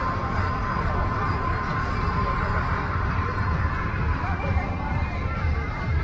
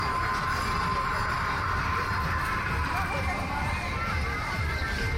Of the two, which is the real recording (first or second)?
second